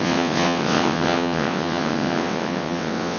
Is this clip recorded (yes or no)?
no